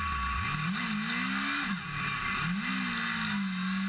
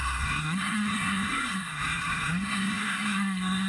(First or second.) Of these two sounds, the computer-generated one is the second